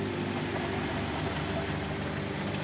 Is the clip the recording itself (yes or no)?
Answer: yes